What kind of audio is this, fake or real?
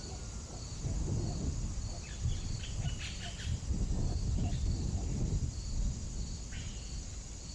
real